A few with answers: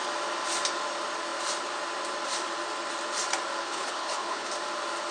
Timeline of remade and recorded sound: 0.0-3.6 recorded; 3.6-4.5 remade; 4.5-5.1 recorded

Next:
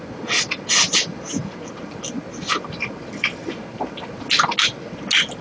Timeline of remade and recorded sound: 0.0-5.4 recorded

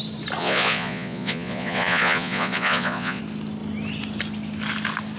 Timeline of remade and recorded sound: 0.0-0.4 recorded; 0.4-3.2 remade; 3.2-5.2 recorded

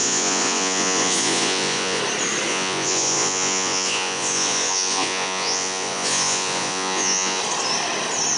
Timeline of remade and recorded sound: 0.0-2.0 remade; 2.0-2.5 recorded; 2.5-7.4 remade; 7.4-8.4 recorded

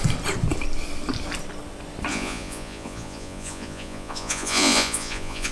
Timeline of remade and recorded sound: 0.0-2.1 recorded; 2.1-5.5 remade

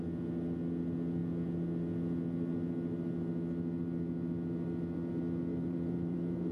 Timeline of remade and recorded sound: 0.0-5.5 recorded; 5.5-6.5 remade

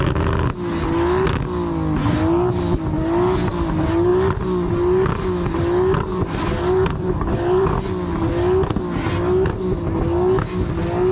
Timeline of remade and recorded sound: 0.0-6.1 recorded; 6.1-7.8 remade; 7.8-11.1 recorded

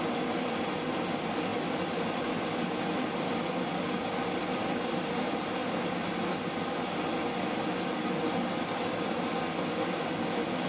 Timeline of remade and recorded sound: 0.0-10.7 recorded